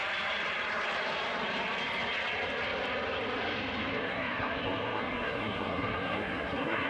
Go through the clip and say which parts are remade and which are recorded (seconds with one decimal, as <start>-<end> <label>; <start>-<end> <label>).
0.0-3.9 recorded; 3.9-6.9 remade